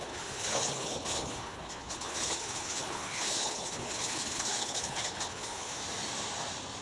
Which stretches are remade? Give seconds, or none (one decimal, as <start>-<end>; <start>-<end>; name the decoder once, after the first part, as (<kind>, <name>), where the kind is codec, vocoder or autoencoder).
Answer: 0.0-5.8 (codec, HILCodec)